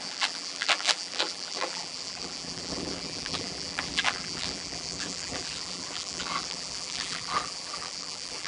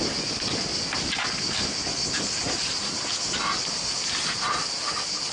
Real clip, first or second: second